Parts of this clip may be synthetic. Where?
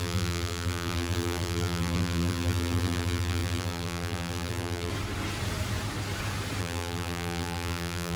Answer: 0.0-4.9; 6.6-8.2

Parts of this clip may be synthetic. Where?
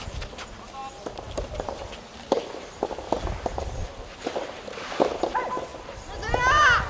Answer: 0.0-0.8; 2.5-6.9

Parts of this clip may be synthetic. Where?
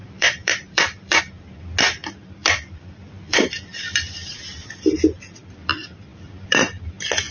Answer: 0.0-1.2; 2.4-6.8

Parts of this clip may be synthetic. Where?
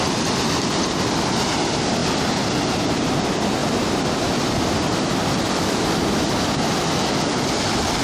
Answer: none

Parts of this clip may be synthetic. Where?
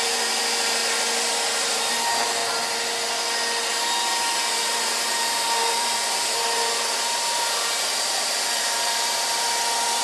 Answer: 0.0-0.8; 1.9-2.4; 3.7-10.0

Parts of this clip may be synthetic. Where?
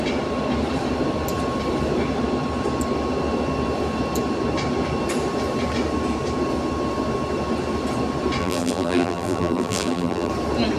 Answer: 8.4-10.3